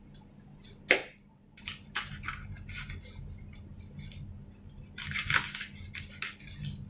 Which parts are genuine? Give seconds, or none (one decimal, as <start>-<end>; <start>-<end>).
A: 0.0-1.0; 1.6-6.9